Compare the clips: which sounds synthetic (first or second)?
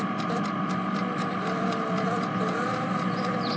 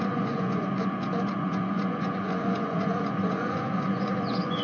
second